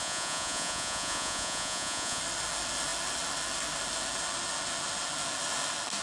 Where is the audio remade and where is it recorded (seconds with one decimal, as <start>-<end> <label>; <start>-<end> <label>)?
0.0-2.2 remade; 2.2-6.0 recorded